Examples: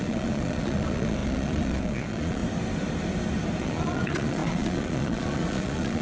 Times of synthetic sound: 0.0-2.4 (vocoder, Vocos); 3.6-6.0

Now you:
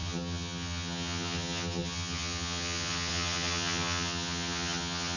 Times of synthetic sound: 0.0-5.2 (vocoder, HiFi-GAN)

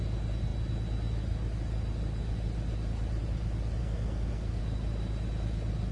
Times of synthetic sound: 3.8-4.6 (codec, SNAC)